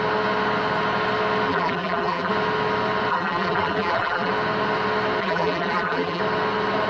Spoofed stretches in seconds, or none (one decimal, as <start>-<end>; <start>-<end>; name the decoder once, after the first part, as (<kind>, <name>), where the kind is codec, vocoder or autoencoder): 1.5-2.3 (vocoder, BigVGAN v2); 3.1-4.3; 5.2-6.2